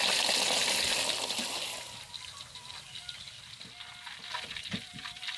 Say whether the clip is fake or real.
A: real